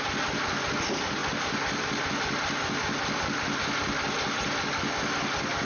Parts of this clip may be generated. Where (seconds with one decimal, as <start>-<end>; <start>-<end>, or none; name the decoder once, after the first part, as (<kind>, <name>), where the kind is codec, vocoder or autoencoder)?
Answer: none